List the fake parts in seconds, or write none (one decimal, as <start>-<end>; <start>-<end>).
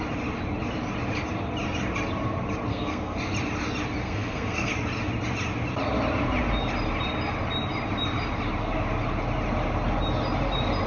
2.7-3.2; 4.0-4.7